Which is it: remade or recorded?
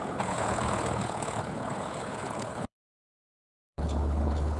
remade